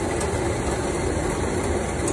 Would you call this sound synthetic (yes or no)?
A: no